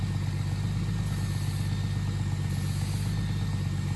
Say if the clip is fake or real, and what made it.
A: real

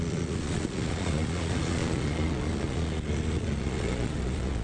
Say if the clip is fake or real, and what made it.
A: fake, vocoder, Vocos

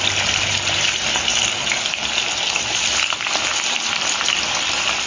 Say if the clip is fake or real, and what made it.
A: real